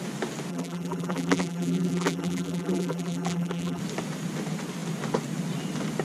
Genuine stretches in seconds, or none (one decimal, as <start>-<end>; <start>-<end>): 0.0-0.5; 3.8-6.0